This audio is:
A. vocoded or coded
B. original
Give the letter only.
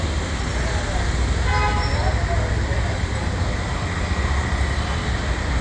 B